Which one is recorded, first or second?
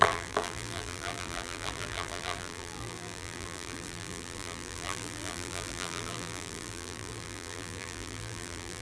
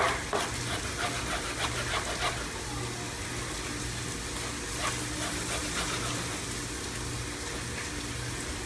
second